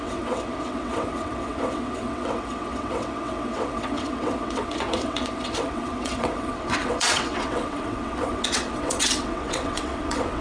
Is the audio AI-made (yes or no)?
yes